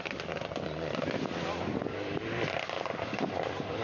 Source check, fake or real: real